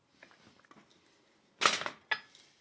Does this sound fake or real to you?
real